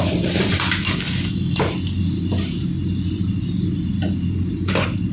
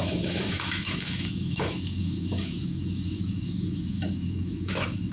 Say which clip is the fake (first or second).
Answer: second